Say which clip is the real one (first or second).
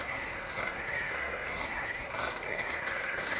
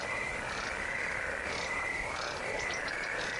second